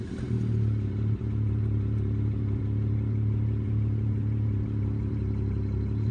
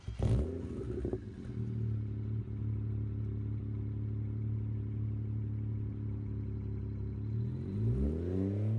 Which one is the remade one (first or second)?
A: first